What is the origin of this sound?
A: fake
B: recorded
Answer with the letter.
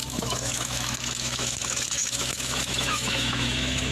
A